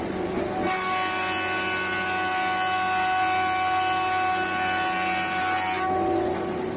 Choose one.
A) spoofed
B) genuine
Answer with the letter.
B